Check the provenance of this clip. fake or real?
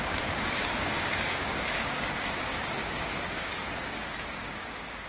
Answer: fake